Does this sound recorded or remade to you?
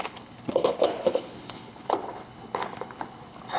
remade